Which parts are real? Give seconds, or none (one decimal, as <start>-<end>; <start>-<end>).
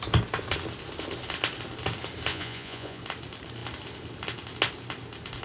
0.0-2.3; 3.0-5.4